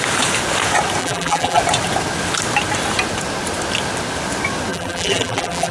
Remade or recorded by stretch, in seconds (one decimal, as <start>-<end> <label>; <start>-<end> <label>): 0.0-1.0 recorded; 1.0-1.6 remade; 1.6-4.7 recorded; 4.7-5.7 remade